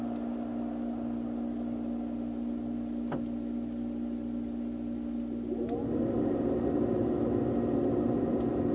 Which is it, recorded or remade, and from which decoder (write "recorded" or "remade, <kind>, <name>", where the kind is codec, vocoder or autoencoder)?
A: recorded